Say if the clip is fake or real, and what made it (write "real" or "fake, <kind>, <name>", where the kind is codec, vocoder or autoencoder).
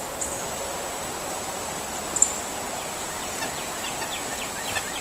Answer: real